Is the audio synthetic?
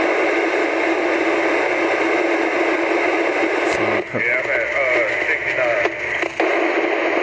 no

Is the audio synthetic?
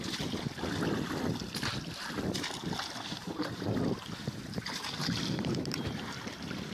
no